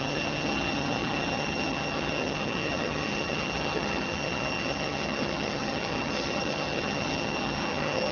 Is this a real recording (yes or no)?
no